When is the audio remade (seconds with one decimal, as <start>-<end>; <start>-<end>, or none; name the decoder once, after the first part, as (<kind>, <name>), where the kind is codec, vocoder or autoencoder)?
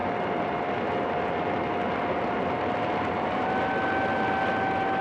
none